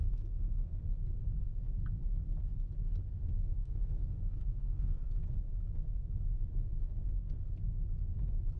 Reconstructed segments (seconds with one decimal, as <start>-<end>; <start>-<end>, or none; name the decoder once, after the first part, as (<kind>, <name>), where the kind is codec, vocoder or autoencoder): 0.0-0.8 (codec, SNAC); 3.6-5.1